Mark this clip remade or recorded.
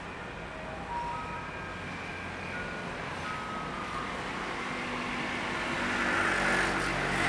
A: recorded